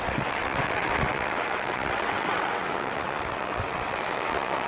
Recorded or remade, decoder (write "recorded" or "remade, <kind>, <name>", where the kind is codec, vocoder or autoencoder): remade, vocoder, WaveNeXt